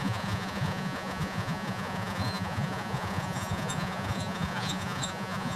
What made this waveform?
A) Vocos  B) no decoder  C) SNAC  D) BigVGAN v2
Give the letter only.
A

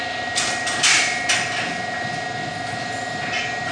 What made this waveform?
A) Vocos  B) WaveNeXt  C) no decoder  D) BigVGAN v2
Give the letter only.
C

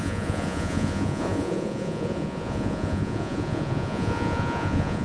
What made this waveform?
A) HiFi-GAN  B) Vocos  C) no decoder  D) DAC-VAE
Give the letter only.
B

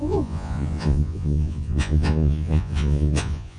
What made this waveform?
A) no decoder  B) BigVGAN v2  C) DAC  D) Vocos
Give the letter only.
D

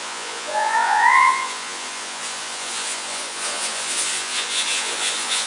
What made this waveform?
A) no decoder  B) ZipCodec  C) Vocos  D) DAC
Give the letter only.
C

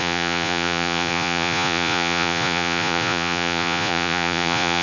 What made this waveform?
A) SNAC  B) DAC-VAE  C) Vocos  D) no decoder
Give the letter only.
C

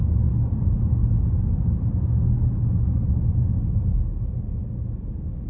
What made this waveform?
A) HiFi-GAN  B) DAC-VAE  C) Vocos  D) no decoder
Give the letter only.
D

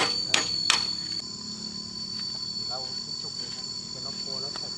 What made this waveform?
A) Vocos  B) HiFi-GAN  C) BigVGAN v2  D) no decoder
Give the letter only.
D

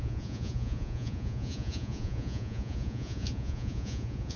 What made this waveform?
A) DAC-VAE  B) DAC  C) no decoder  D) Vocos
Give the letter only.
D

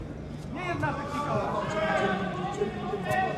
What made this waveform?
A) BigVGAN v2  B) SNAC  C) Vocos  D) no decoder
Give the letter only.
D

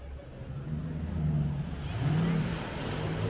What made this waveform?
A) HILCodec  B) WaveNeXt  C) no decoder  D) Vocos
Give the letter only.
C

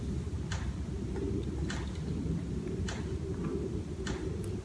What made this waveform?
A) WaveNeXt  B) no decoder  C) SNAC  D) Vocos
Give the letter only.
B